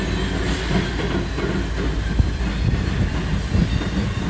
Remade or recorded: recorded